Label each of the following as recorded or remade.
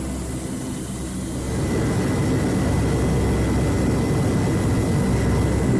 recorded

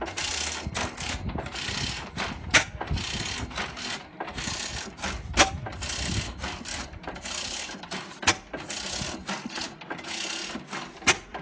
recorded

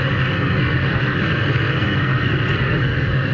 remade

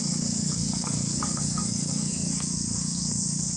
remade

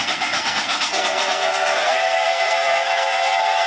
remade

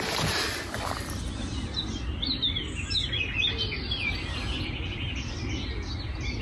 recorded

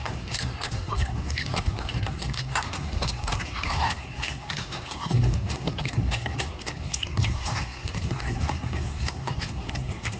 remade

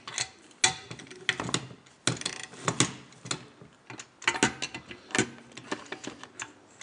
recorded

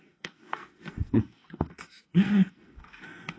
remade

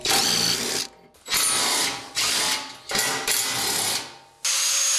recorded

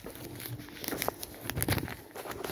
recorded